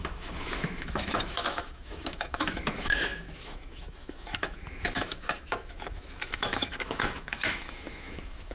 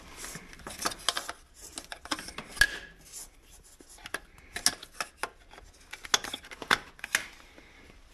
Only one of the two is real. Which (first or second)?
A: second